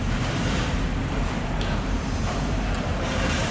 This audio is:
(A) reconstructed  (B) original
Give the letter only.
A